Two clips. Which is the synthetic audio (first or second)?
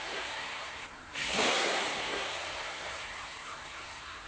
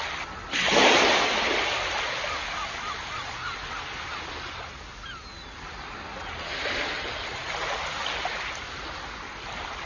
first